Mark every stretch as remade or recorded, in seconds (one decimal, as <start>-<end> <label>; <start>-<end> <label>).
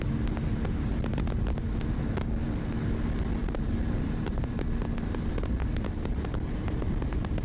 0.0-3.4 recorded; 3.4-6.8 remade; 6.8-7.4 recorded